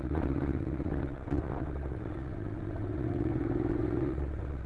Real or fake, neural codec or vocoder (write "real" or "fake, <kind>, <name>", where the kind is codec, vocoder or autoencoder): fake, vocoder, WaveNeXt